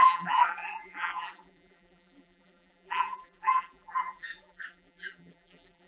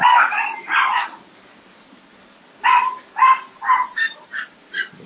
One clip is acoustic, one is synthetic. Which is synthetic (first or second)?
first